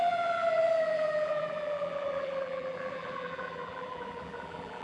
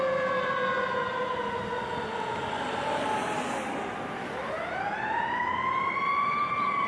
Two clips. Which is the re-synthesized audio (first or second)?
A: first